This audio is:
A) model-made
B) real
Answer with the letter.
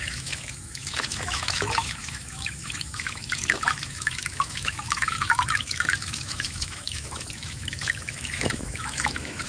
A